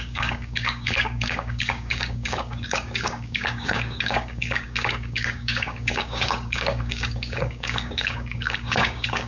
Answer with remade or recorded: remade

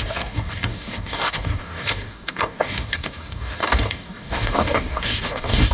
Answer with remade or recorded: remade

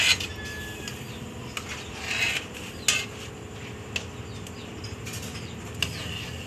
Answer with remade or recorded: recorded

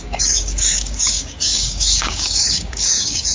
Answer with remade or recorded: remade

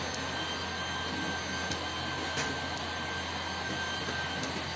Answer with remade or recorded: recorded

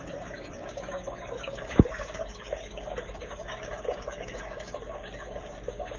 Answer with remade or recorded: remade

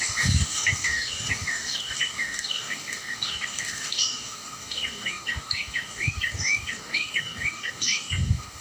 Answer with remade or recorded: remade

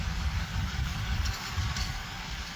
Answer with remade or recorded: remade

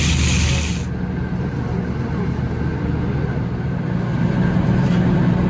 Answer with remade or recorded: recorded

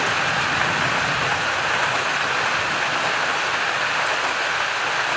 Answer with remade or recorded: recorded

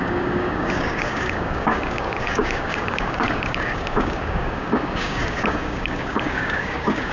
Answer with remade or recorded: remade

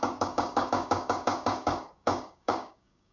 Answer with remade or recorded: remade